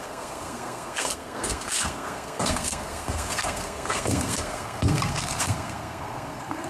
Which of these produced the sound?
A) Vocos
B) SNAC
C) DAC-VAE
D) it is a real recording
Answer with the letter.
B